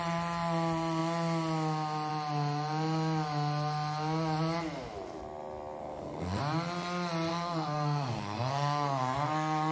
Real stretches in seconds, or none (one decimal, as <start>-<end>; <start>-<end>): 0.0-5.8; 6.4-7.3